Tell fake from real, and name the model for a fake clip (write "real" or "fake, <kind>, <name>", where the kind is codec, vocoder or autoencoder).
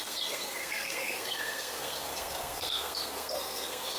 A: fake, codec, SNAC